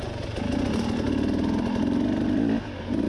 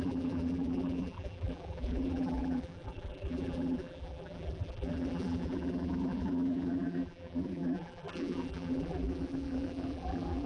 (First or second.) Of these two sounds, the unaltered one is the first